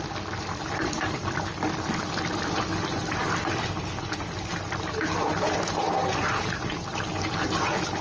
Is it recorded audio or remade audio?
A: remade